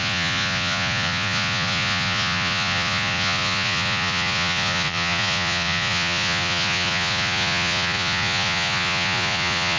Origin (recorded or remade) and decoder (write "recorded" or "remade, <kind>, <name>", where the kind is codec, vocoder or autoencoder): remade, vocoder, Vocos